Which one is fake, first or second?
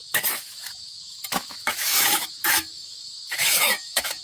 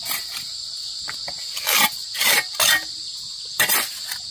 first